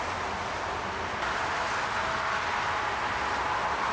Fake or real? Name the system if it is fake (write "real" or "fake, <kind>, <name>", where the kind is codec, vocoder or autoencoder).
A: real